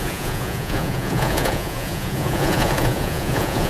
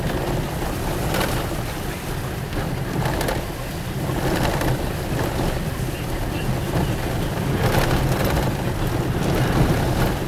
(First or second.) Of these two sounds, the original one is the second